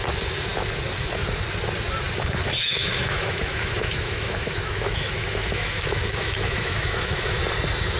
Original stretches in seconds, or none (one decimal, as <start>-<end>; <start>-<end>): 0.0-2.6; 7.4-8.0